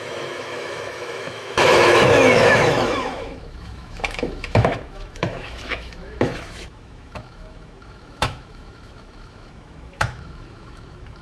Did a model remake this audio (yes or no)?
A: yes